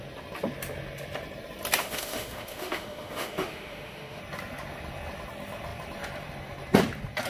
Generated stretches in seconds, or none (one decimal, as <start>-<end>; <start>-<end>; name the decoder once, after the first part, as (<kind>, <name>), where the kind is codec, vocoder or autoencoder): 1.8-4.2 (autoencoder, DAC-VAE)